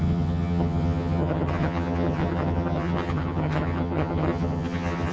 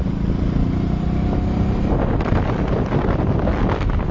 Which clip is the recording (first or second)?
second